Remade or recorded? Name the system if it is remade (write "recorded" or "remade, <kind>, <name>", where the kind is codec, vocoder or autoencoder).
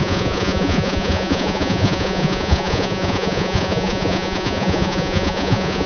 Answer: remade, vocoder, Vocos